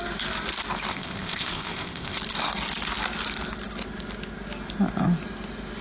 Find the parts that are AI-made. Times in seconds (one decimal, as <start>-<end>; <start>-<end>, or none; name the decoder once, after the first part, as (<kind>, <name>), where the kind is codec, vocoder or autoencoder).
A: 0.9-2.2 (codec, ZipCodec)